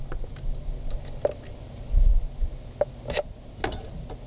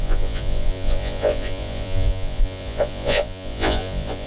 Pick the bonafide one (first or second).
first